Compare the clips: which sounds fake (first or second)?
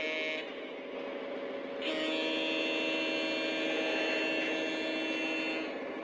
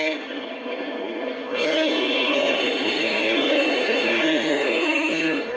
second